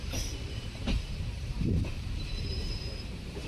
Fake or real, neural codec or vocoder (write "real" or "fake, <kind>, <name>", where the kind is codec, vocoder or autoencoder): fake, vocoder, BigVGAN v2